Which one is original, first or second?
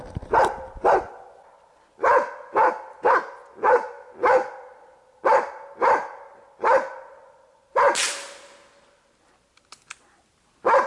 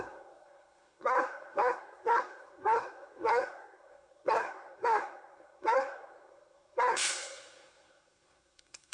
first